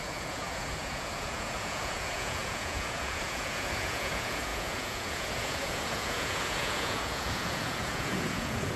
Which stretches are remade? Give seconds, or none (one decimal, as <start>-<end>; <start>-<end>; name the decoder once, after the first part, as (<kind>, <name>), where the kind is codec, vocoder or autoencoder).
0.0-8.8 (vocoder, Vocos)